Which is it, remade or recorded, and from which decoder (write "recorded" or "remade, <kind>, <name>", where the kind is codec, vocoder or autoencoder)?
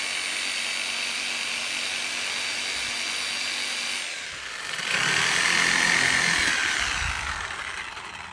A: recorded